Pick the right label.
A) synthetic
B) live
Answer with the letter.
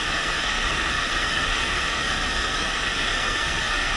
A